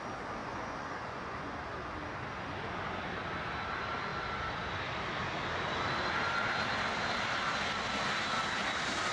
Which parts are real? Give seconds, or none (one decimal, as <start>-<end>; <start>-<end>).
0.0-0.4; 1.6-9.1